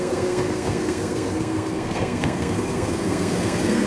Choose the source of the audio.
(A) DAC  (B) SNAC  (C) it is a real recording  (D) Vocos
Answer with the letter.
B